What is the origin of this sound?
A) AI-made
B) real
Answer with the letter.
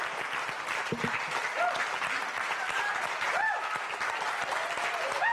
B